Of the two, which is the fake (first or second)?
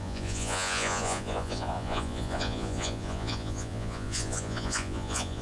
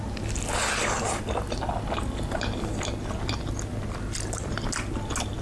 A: first